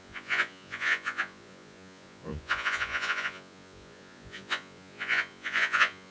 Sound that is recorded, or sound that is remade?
remade